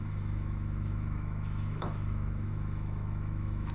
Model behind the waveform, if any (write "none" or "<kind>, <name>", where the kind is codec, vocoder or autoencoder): autoencoder, DAC-VAE